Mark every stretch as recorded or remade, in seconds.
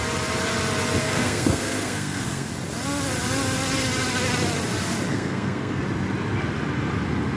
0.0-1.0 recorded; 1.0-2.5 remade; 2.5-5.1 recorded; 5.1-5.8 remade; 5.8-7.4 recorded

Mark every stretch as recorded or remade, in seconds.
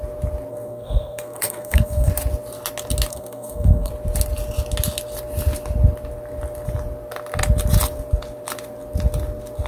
0.0-0.5 recorded; 0.5-2.1 remade; 2.1-3.1 recorded; 3.1-3.9 remade; 3.9-9.7 recorded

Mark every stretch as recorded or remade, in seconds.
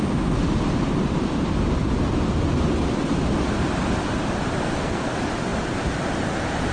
0.0-4.6 recorded; 4.6-5.1 remade; 5.1-6.7 recorded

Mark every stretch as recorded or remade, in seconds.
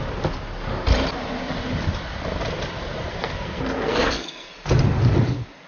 0.0-3.1 recorded; 3.1-4.5 remade; 4.5-5.7 recorded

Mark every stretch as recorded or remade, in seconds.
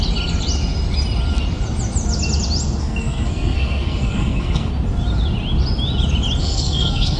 0.0-2.8 recorded; 2.8-4.7 remade; 4.7-6.4 recorded; 6.4-7.2 remade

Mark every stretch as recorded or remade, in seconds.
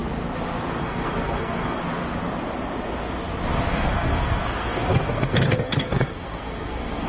0.0-0.8 recorded; 0.8-1.8 remade; 1.8-3.7 recorded; 3.7-7.1 remade